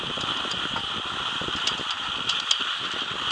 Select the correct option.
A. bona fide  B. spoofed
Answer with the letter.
A